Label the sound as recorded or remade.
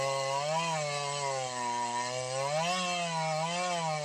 recorded